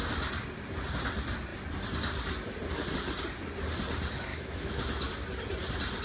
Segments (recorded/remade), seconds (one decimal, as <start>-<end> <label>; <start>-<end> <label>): 0.0-4.3 recorded; 4.3-5.1 remade; 5.1-6.0 recorded

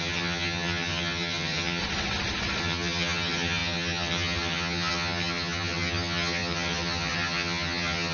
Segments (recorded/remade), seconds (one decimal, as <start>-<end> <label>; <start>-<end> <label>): 0.0-1.8 remade; 1.8-2.6 recorded; 2.6-8.1 remade

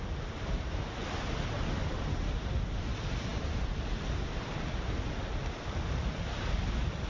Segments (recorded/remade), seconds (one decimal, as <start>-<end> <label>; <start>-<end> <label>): 0.0-1.0 recorded; 1.0-1.9 remade; 1.9-7.1 recorded

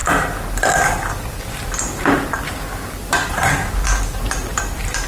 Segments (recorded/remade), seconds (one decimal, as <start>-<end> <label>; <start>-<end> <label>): 0.0-1.8 remade; 1.8-4.5 recorded; 4.5-5.1 remade

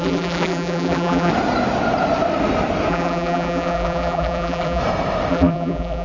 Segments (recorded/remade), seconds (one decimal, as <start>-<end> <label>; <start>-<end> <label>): 0.0-1.3 remade; 1.3-2.9 recorded; 2.9-4.8 remade; 4.8-5.3 recorded; 5.3-6.0 remade

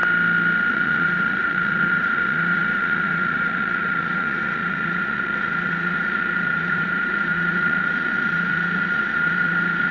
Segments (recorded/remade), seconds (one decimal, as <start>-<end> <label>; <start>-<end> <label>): 0.0-0.7 recorded; 0.7-9.9 remade